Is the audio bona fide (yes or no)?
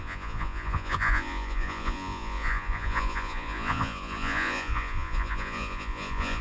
no